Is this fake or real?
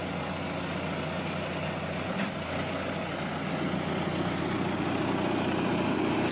real